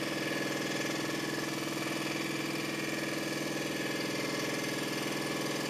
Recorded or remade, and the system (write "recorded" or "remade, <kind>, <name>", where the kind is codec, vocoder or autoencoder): recorded